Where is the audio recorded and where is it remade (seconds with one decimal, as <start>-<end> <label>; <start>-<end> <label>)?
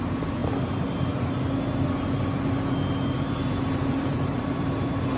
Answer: 0.0-0.4 remade; 0.4-3.5 recorded; 3.5-5.2 remade